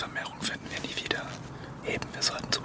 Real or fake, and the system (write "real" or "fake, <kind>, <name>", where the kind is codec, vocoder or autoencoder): real